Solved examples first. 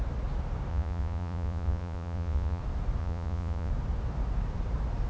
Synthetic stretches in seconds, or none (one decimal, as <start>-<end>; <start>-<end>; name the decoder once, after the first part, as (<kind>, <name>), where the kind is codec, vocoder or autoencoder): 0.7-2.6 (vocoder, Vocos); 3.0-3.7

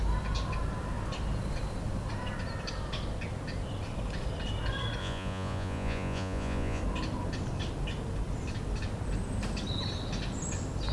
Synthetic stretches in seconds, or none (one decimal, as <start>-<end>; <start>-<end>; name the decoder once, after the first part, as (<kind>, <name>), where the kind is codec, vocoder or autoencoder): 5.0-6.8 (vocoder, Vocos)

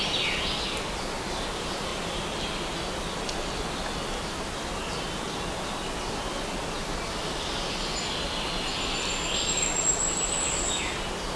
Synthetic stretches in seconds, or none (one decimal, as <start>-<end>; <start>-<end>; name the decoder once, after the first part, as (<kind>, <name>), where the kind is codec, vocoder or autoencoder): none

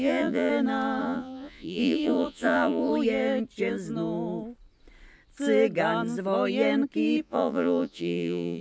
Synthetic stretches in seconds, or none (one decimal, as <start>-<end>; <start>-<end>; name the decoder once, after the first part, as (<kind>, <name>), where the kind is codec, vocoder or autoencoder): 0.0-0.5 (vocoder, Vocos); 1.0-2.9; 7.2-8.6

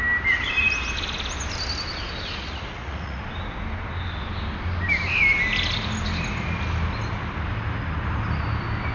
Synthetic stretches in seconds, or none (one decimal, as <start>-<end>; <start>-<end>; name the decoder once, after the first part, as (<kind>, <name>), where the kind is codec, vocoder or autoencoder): 2.4-3.2 (vocoder, Vocos)

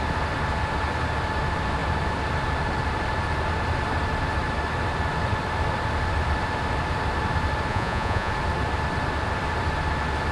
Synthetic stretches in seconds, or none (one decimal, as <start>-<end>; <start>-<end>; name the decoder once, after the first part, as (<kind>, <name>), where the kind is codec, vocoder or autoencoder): 7.7-8.3 (vocoder, Vocos)

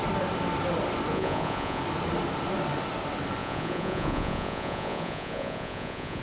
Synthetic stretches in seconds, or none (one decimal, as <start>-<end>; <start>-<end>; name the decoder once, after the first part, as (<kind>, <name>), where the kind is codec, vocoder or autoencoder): 1.1-1.8 (vocoder, Vocos); 3.4-6.2